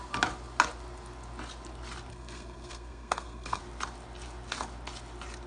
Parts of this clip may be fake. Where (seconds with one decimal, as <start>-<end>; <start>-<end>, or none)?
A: 2.1-3.6